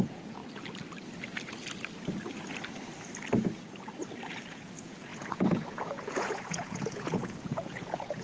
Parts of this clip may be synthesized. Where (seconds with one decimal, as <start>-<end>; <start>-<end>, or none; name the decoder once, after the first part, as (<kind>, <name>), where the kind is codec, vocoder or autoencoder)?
0.0-0.4 (vocoder, Vocos); 4.5-8.2